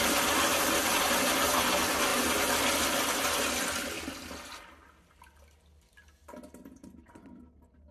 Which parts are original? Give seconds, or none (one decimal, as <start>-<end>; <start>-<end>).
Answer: 0.0-7.9